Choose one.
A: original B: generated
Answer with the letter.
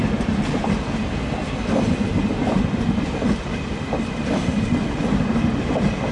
A